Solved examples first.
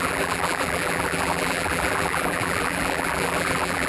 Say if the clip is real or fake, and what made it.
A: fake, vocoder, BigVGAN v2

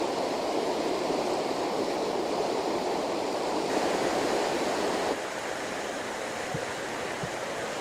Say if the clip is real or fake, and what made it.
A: fake, vocoder, BigVGAN v2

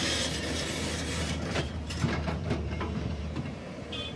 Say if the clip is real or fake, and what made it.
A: fake, vocoder, BigVGAN v2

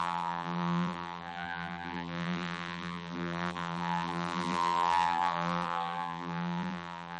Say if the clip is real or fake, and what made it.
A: fake, vocoder, BigVGAN v2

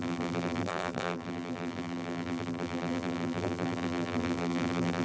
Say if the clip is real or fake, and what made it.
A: fake, vocoder, BigVGAN v2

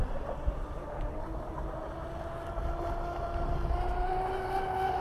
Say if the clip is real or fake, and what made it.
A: real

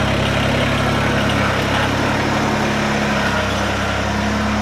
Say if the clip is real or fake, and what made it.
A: real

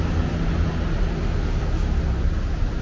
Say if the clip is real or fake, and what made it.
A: real